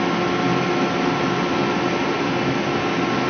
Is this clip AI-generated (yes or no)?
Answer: no